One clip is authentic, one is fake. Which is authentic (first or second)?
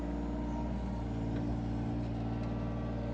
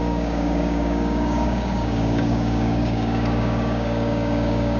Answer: first